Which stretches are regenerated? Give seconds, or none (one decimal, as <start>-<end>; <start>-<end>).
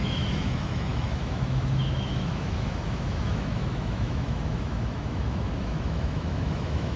0.0-7.0